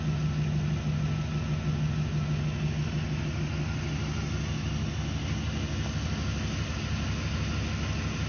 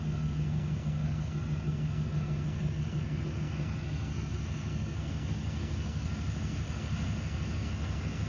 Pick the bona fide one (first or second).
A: first